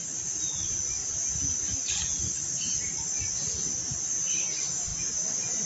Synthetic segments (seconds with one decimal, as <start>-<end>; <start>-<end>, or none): none